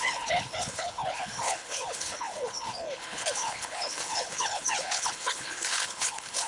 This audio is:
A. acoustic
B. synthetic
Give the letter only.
B